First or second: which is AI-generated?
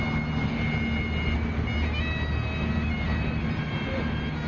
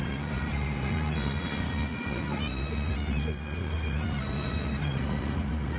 second